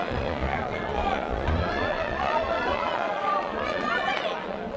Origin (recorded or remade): remade